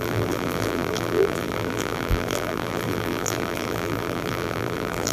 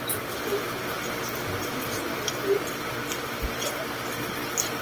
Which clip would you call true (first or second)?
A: second